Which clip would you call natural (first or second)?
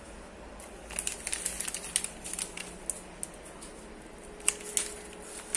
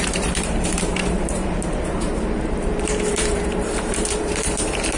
first